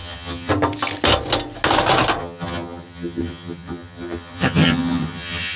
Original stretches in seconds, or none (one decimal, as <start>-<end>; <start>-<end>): 0.5-2.2